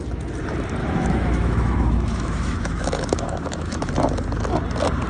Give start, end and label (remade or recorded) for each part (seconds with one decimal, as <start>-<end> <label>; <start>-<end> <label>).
0.0-0.8 recorded; 0.8-3.9 remade; 3.9-5.1 recorded